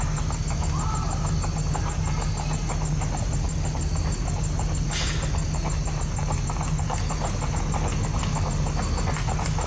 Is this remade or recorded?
recorded